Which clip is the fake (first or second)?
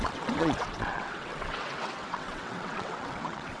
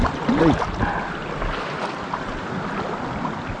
first